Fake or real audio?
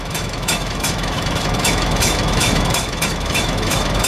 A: fake